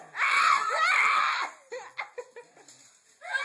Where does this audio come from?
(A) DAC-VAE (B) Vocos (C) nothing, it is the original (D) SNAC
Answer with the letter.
C